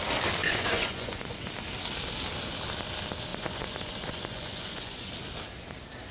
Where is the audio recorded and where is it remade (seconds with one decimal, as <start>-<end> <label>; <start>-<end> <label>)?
0.0-0.4 recorded; 0.4-1.5 remade; 1.5-3.3 recorded; 3.3-5.1 remade; 5.1-6.1 recorded